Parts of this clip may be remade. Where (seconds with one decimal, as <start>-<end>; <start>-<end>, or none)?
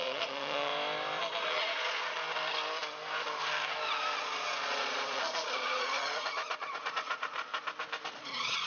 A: 0.0-0.7; 1.4-2.2; 4.2-7.5; 8.1-8.7